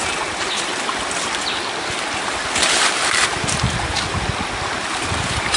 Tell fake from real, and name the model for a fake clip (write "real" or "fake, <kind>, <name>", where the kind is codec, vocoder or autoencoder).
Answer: real